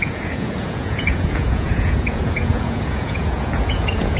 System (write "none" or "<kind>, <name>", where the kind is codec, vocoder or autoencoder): vocoder, Vocos